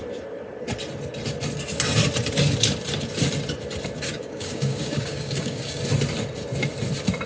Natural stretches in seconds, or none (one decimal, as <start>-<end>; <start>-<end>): 0.0-4.1; 5.8-7.3